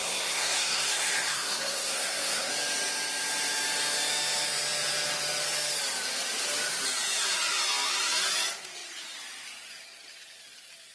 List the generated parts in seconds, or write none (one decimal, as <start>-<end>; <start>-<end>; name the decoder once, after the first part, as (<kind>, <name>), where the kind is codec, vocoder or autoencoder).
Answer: 0.0-2.5 (codec, SNAC)